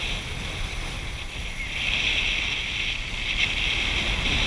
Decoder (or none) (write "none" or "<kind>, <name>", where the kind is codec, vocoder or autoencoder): none